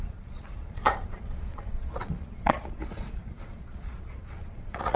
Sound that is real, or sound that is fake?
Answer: fake